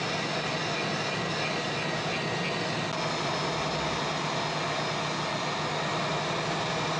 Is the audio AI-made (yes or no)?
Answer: no